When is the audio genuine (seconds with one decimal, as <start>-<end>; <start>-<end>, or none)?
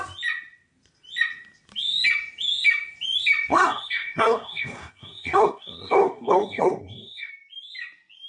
0.0-3.5; 7.3-8.3